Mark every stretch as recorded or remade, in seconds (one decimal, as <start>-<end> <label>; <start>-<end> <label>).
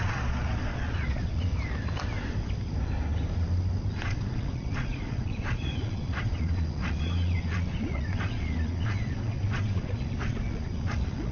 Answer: 0.0-1.5 remade; 1.5-3.9 recorded; 3.9-11.3 remade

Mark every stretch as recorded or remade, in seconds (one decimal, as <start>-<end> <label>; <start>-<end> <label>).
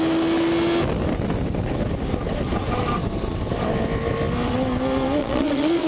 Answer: 0.0-5.2 recorded; 5.2-5.9 remade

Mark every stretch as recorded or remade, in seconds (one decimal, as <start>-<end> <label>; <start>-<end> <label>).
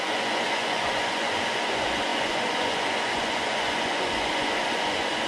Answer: 0.0-5.3 remade